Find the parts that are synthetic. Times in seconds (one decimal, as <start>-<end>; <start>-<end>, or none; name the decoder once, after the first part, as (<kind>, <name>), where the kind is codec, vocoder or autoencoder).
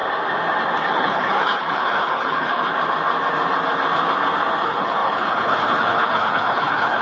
0.8-2.7 (codec, HILCodec); 4.6-7.0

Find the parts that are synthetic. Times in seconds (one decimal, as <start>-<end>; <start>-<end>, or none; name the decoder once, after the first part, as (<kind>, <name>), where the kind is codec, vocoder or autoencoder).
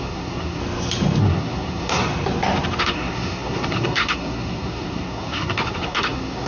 0.0-0.6 (codec, SNAC); 1.2-2.0; 2.8-6.5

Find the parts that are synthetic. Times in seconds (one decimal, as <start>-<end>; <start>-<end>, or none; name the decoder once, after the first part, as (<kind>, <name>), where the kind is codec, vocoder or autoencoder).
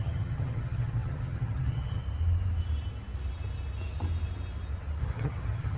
0.0-2.0 (vocoder, HiFi-GAN); 5.0-5.8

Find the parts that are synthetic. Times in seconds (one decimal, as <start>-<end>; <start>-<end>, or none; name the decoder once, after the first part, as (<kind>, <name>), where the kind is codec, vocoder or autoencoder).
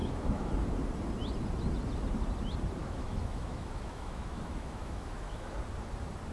0.0-0.5 (autoencoder, DAC-VAE); 2.8-5.6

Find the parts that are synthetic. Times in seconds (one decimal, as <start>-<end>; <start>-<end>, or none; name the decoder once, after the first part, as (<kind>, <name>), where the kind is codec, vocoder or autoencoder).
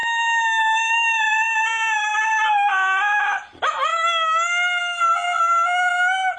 3.9-5.0 (autoencoder, DAC-VAE)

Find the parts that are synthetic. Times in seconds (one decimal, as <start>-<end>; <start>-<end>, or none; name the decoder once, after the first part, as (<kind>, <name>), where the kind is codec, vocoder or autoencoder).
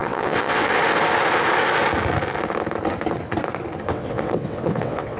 0.0-0.8 (vocoder, WaveNeXt); 3.9-5.2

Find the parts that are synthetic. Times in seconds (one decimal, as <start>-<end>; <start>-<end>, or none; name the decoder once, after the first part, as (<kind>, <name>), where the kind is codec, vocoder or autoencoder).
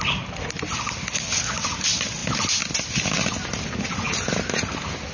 none